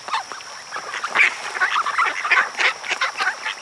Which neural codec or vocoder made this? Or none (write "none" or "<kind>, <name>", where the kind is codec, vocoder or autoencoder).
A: none